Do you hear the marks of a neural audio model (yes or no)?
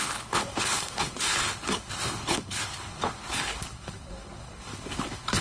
yes